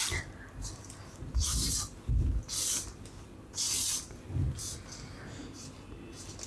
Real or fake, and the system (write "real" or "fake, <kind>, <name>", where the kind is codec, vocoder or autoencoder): real